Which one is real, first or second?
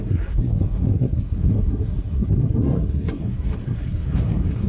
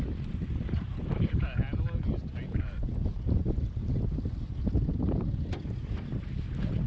second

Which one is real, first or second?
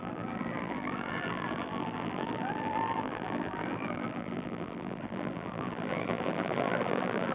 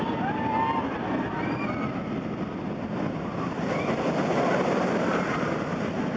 second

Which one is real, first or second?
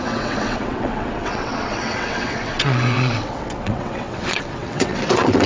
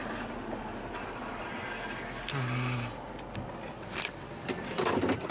second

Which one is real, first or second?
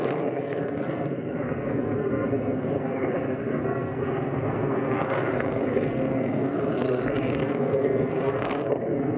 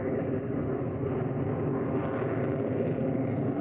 second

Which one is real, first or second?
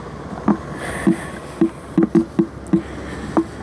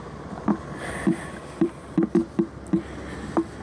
first